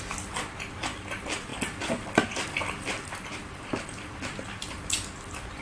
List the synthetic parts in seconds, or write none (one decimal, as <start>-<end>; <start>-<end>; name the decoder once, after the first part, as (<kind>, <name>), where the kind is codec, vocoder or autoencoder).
1.5-4.9 (vocoder, BigVGAN v2)